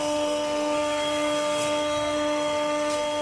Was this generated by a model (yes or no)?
yes